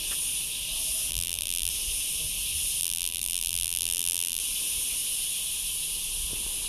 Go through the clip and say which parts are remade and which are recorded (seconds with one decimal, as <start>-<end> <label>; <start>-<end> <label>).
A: 0.0-1.1 recorded; 1.1-1.7 remade; 1.7-2.8 recorded; 2.8-4.4 remade; 4.4-6.7 recorded